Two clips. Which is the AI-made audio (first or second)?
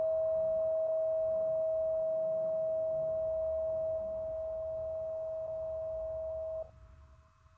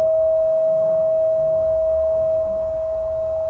second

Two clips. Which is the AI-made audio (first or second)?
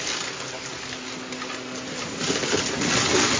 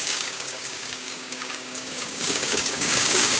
second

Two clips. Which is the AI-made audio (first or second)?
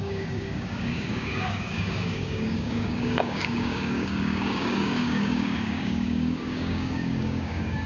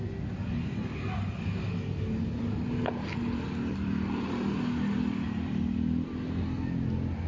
first